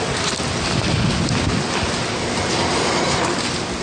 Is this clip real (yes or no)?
yes